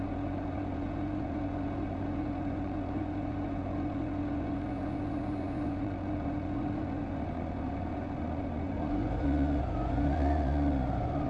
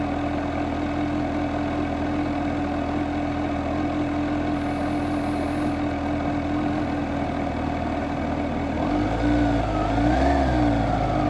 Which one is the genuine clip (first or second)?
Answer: second